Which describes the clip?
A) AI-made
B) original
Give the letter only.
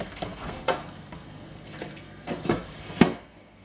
A